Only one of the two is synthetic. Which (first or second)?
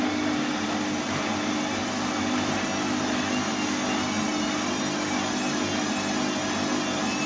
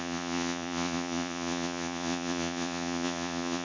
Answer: second